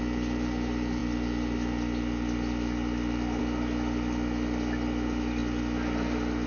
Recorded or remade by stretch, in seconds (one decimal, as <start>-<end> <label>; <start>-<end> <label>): 0.0-6.5 recorded